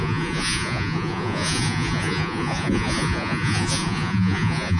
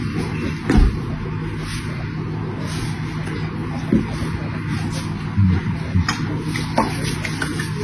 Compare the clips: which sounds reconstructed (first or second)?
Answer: first